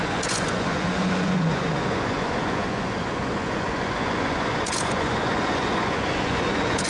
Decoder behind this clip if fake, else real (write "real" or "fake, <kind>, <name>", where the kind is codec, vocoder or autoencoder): fake, vocoder, Vocos